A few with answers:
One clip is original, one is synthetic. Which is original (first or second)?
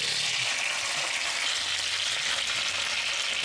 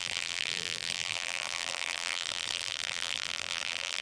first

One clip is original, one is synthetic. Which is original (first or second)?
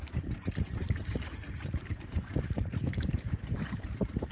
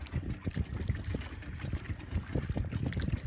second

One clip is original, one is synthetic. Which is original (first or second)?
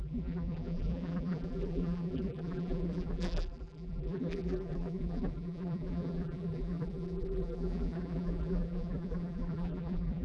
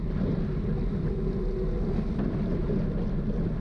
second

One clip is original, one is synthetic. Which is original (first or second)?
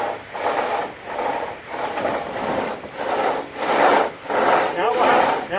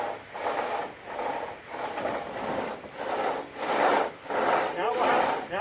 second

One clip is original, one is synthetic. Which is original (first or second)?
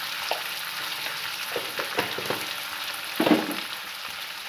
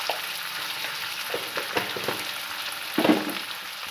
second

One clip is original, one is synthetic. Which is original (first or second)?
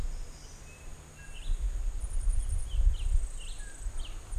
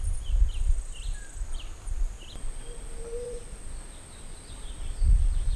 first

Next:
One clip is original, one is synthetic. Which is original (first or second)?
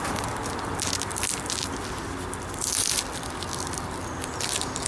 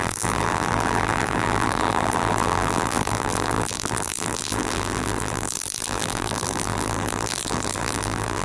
first